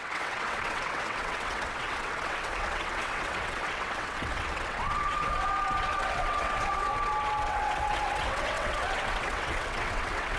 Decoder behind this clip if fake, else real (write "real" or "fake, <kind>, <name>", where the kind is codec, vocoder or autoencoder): fake, vocoder, WaveNeXt